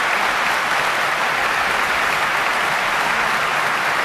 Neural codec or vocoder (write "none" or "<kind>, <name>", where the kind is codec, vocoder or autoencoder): none